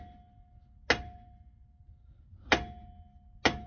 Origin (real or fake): real